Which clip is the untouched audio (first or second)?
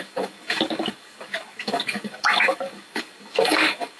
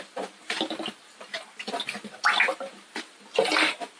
second